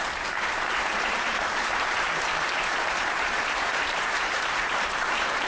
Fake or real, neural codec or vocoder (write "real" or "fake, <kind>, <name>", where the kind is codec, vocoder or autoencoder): fake, vocoder, BigVGAN v2